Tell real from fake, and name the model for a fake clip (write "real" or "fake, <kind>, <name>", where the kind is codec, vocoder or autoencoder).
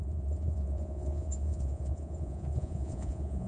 fake, vocoder, Vocos